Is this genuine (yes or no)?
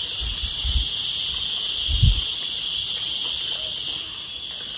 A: yes